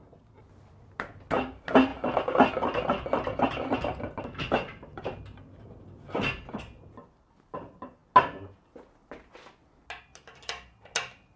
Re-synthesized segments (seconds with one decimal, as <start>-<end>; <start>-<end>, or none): none